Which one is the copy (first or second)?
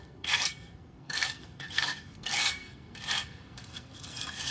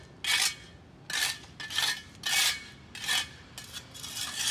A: first